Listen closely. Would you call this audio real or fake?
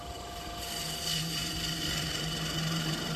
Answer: fake